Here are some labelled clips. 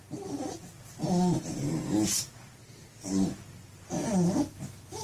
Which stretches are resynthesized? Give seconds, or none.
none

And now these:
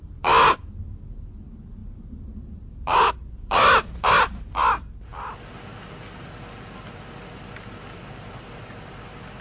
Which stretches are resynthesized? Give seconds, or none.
none

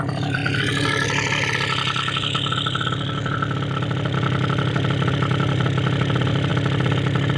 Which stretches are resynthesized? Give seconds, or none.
0.0-0.4 (vocoder, BigVGAN v2); 4.7-7.4

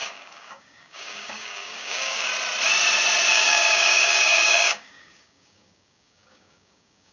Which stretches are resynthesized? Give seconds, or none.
0.0-2.3 (codec, DAC); 3.3-7.1

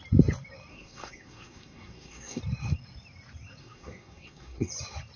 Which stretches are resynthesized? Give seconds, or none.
0.7-2.4 (codec, SNAC); 3.6-4.7

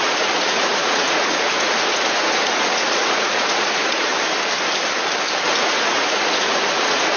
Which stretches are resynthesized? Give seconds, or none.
0.0-4.1 (vocoder, Vocos); 5.6-7.2

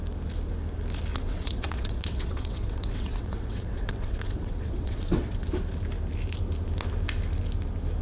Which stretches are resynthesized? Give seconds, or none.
1.1-5.5 (vocoder, WaveNeXt)